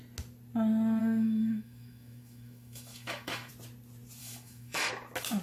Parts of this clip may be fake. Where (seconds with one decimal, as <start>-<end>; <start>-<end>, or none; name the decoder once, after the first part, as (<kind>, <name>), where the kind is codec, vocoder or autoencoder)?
1.0-3.5 (autoencoder, DAC-VAE); 4.2-4.9